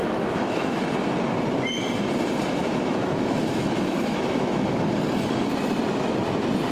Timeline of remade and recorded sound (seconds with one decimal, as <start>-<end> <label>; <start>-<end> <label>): 0.0-0.8 remade; 0.8-2.6 recorded; 2.6-4.9 remade; 4.9-6.7 recorded